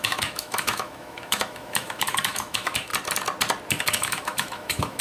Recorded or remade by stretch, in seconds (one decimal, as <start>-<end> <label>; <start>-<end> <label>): 0.0-2.9 remade; 2.9-3.7 recorded; 3.7-5.0 remade